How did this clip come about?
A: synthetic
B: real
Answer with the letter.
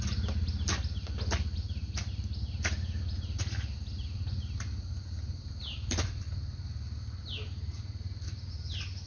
B